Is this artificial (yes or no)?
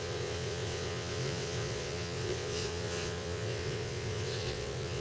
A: yes